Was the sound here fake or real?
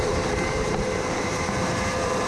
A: fake